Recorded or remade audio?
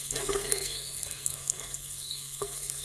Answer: remade